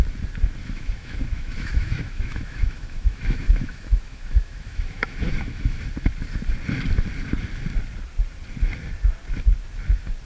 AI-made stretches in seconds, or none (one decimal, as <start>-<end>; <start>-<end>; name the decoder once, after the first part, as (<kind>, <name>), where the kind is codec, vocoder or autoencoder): 0.6-5.8 (autoencoder, DAC-VAE)